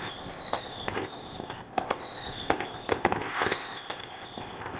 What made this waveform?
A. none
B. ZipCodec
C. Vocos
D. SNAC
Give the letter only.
B